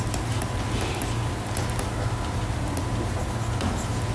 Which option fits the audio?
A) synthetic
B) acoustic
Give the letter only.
B